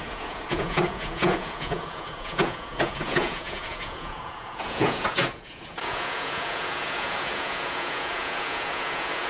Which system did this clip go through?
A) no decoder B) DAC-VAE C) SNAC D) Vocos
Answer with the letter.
D